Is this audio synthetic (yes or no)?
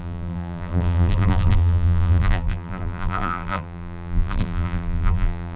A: yes